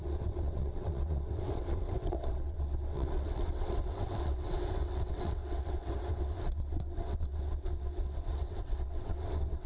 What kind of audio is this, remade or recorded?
remade